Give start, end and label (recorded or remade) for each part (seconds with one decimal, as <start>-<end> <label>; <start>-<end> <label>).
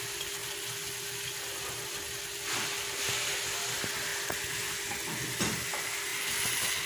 0.0-6.9 recorded